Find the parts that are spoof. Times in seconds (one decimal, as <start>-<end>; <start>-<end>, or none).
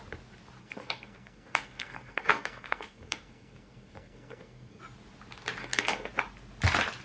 0.6-4.8; 5.6-6.1